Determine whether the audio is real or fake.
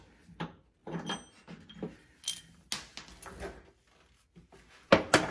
real